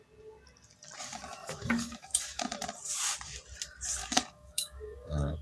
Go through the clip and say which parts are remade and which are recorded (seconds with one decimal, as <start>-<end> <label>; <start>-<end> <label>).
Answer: 0.0-1.4 recorded; 1.4-2.4 remade; 2.4-4.0 recorded; 4.0-5.4 remade